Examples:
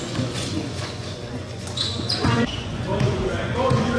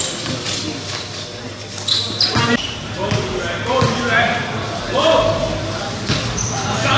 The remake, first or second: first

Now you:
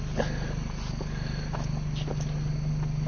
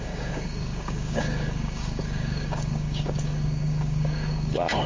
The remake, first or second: second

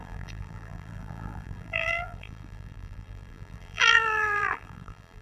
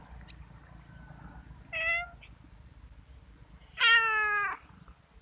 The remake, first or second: first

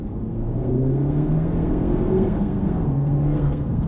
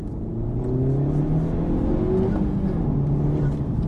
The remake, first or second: first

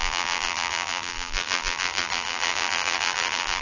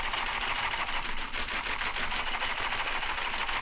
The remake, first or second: first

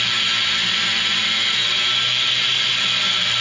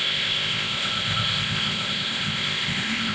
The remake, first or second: second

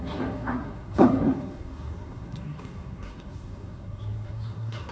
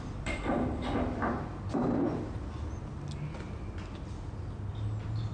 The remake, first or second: first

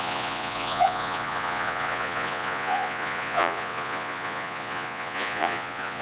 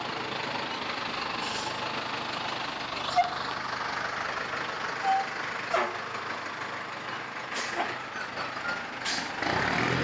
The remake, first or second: first